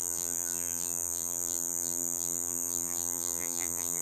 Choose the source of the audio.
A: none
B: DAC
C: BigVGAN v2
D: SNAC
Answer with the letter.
C